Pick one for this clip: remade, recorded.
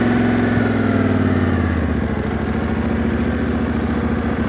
recorded